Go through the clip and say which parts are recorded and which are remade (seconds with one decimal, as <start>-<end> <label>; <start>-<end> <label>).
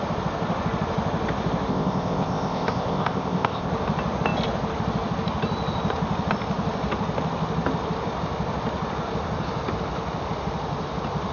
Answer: 0.0-1.7 recorded; 1.7-3.7 remade; 3.7-11.3 recorded